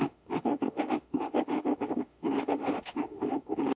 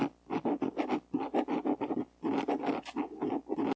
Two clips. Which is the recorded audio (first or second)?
second